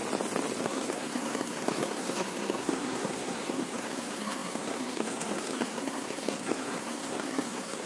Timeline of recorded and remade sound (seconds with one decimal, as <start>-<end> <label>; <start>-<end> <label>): 0.0-0.6 recorded; 0.6-7.9 remade